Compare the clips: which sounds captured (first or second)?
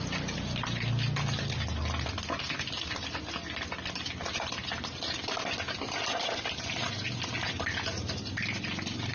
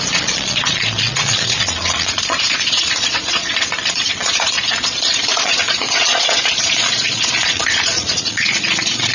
first